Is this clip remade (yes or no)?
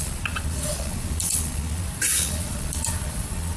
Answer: yes